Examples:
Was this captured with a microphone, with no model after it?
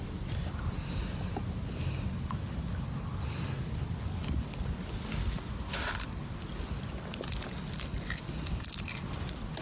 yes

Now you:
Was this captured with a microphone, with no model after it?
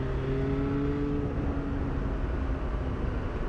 yes